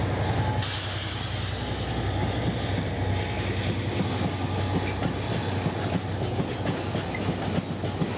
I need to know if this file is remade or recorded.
recorded